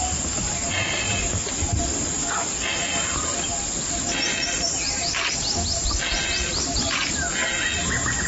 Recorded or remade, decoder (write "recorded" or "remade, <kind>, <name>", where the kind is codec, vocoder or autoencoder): recorded